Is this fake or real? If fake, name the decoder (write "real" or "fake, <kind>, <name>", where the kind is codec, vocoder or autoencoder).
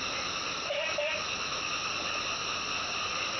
real